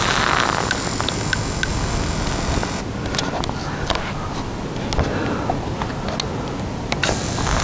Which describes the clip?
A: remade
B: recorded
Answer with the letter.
B